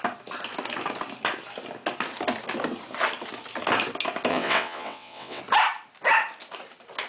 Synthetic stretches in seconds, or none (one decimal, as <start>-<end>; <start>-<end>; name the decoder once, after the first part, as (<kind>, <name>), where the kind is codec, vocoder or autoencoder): 4.3-5.4 (vocoder, WaveNeXt)